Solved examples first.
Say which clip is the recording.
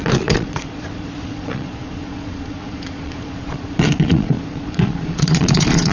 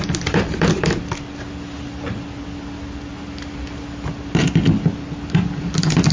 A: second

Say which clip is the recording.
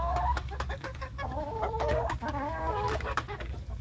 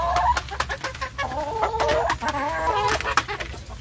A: second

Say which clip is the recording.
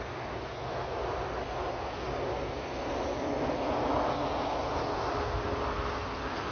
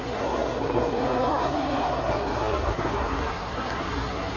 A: first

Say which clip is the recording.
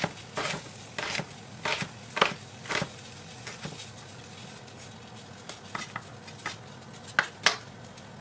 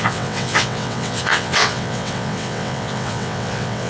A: first